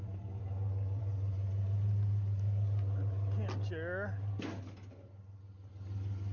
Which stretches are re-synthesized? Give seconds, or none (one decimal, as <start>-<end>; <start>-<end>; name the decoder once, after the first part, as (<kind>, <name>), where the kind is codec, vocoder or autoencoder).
none